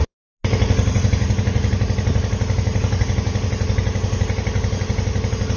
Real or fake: real